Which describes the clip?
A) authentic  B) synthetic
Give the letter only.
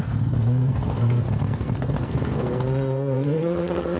B